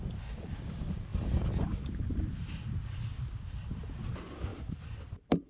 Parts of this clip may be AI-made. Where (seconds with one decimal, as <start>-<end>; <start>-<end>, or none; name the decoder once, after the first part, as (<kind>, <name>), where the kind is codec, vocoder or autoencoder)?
4.5-5.5 (vocoder, BigVGAN v2)